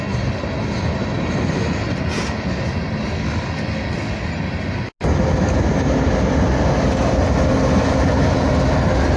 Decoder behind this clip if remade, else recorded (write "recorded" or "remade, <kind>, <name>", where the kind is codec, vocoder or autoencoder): recorded